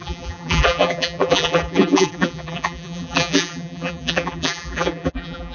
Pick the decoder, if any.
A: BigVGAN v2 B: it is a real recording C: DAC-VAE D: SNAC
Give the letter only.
A